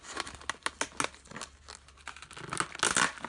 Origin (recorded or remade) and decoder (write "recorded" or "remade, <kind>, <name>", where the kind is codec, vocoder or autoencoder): recorded